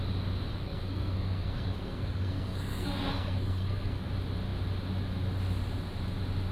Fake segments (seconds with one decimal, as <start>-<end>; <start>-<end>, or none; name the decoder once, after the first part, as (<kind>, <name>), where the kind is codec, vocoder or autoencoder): 0.5-4.1 (codec, SNAC)